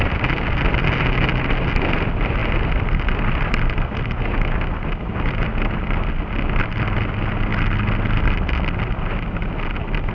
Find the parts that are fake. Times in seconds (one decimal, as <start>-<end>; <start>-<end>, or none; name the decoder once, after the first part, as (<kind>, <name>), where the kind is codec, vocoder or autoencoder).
none